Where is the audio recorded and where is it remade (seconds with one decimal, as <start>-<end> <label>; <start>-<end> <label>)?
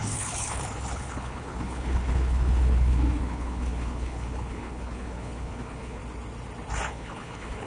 0.0-6.0 remade; 6.0-6.9 recorded; 6.9-7.7 remade